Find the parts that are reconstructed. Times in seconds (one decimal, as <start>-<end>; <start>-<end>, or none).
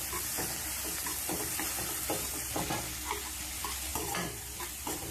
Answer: 3.9-5.1